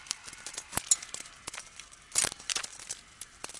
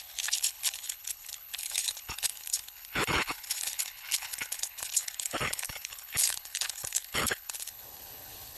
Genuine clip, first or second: first